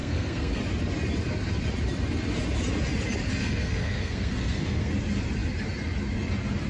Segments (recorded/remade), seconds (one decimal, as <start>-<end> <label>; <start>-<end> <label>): 0.0-0.6 remade; 0.6-3.4 recorded; 3.4-4.9 remade; 4.9-6.7 recorded